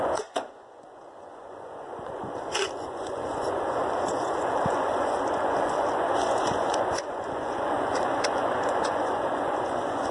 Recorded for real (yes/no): no